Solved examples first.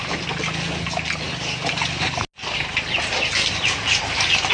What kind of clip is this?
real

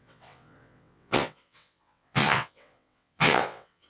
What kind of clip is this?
fake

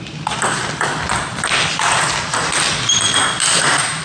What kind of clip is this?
real